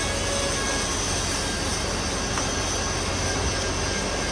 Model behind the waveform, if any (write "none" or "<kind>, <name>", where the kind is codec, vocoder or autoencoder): none